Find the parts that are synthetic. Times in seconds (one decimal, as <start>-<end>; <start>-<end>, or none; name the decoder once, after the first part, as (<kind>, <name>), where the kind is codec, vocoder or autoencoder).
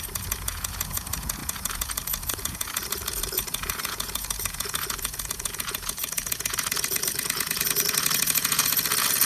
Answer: 0.0-9.3 (vocoder, Vocos)